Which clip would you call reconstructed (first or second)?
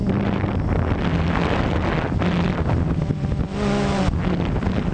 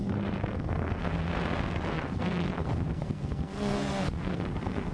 second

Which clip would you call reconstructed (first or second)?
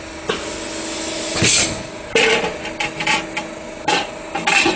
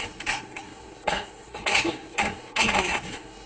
second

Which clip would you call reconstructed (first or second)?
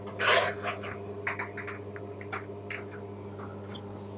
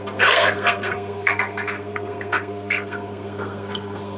second